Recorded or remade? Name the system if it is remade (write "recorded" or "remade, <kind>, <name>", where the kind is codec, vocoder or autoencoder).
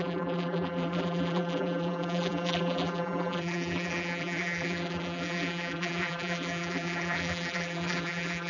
remade, vocoder, BigVGAN v2